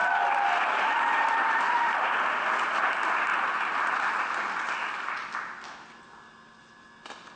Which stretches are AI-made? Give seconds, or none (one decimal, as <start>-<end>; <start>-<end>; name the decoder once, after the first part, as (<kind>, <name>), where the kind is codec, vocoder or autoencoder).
none